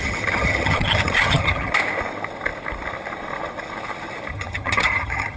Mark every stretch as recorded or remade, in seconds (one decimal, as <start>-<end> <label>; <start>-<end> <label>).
0.0-1.7 remade; 1.7-4.3 recorded; 4.3-5.4 remade